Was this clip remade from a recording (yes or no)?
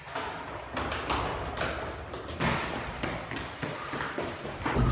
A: no